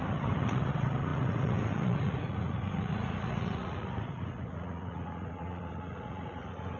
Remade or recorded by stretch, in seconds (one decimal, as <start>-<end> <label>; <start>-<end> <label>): 0.0-6.8 remade